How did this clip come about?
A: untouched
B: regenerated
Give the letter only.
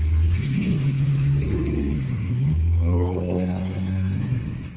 B